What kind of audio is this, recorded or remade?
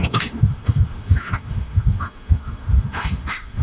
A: remade